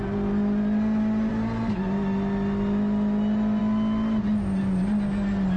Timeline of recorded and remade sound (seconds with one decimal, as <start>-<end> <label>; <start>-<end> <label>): 0.0-5.6 recorded